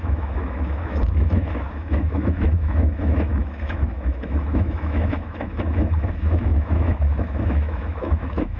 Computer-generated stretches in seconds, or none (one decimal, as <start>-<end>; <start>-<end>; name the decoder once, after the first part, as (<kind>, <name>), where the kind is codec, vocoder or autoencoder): 0.0-8.6 (autoencoder, DAC-VAE)